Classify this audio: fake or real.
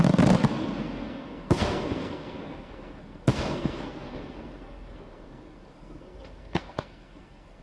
fake